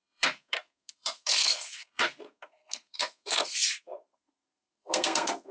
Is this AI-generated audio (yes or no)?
yes